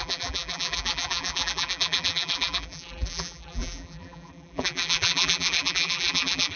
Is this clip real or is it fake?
fake